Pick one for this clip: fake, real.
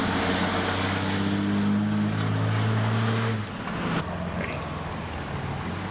real